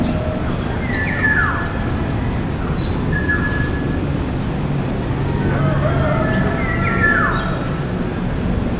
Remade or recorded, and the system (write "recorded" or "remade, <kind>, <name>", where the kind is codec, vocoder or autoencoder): recorded